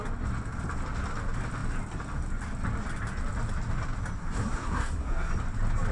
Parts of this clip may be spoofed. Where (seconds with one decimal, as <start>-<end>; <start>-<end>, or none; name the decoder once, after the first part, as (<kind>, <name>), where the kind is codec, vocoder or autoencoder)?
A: 4.2-5.3 (codec, SNAC)